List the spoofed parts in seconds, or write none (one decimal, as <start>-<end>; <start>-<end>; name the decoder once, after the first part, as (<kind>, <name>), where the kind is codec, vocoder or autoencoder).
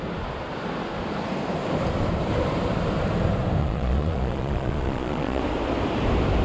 3.6-5.4 (vocoder, Vocos)